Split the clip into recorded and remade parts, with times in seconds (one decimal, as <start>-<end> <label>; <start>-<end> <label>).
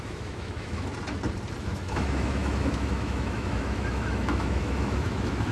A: 0.0-0.9 remade; 0.9-1.6 recorded; 1.6-5.5 remade